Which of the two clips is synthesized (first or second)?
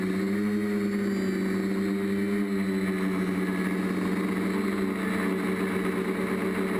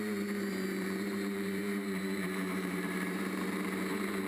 second